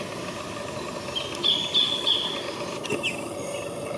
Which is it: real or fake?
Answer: real